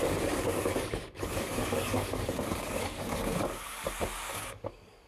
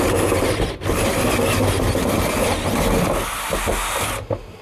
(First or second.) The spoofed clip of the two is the first